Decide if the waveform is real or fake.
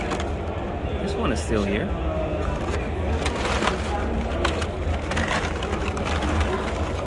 real